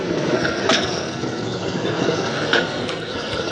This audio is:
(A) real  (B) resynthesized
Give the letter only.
B